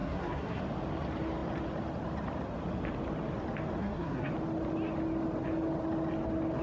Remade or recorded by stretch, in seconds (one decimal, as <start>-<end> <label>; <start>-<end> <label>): 0.0-0.6 remade; 0.6-3.8 recorded; 3.8-4.3 remade; 4.3-6.6 recorded